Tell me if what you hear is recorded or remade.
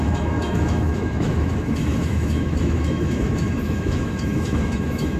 remade